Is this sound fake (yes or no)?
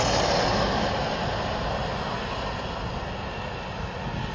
no